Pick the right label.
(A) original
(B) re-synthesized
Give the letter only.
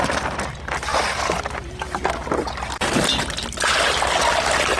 A